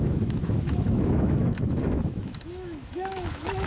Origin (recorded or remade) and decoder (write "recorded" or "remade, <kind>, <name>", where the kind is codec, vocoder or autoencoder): remade, autoencoder, DAC-VAE